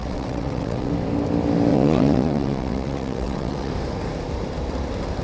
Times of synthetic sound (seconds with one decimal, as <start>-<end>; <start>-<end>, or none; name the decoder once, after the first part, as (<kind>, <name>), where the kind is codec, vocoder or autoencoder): 0.0-0.9 (vocoder, WaveNeXt); 1.7-3.7